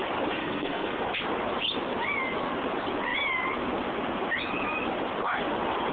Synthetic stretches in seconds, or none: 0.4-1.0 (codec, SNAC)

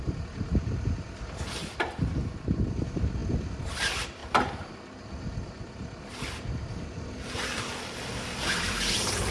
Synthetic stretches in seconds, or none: 0.0-9.3 (vocoder, BigVGAN v2)

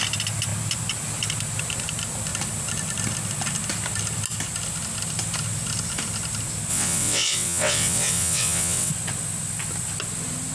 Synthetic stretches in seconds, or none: 6.7-8.9 (vocoder, WaveNeXt)

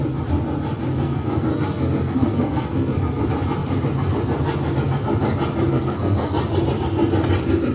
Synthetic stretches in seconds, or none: 0.9-3.2 (codec, SNAC); 5.7-6.3

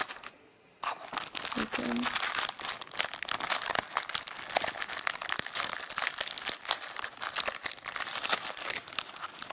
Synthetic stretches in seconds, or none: none

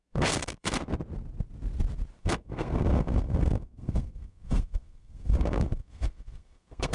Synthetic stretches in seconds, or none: 0.0-0.9 (codec, SNAC); 2.2-6.9

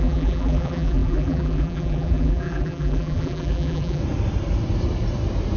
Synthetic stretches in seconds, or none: 0.0-4.0 (vocoder, BigVGAN v2)